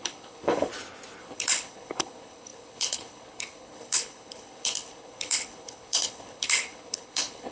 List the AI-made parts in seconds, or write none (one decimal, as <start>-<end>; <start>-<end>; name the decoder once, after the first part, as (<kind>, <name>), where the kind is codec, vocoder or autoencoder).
0.0-0.7 (codec, HILCodec); 1.2-7.5